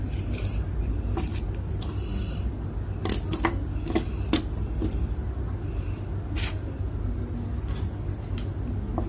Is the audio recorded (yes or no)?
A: yes